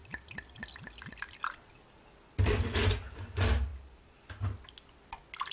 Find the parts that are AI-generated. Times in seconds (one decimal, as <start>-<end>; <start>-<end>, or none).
0.0-1.7; 3.7-4.4